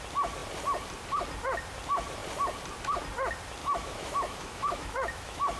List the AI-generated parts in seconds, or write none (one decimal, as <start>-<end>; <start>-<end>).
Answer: 3.6-5.6